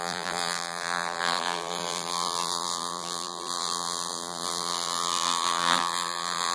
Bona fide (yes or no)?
no